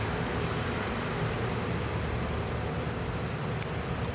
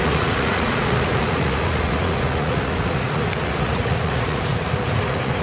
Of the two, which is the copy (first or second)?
second